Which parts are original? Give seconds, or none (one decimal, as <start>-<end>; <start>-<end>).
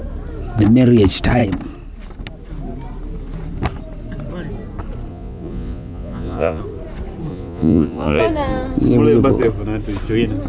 0.0-5.1; 6.6-7.3; 8.2-10.5